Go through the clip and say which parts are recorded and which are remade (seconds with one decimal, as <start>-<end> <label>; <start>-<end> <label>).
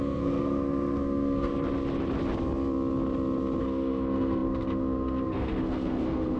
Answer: 0.0-1.5 remade; 1.5-3.6 recorded; 3.6-6.4 remade